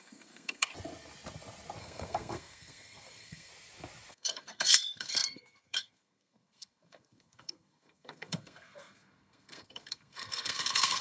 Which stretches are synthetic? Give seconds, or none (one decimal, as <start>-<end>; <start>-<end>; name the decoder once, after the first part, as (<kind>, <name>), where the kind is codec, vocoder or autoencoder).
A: 0.0-0.7 (codec, SNAC); 1.8-3.5; 4.1-11.0